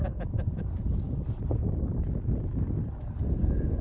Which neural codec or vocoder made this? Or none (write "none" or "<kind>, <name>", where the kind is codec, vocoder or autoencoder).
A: none